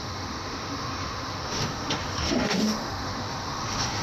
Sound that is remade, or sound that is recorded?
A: remade